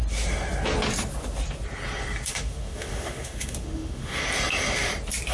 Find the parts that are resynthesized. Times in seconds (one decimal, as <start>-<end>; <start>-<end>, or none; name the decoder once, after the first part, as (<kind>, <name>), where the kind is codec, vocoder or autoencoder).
2.3-4.2 (autoencoder, DAC-VAE)